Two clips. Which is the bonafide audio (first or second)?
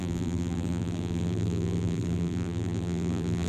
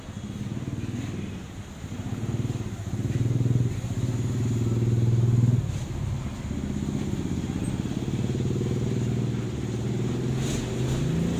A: second